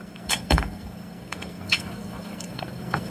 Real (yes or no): no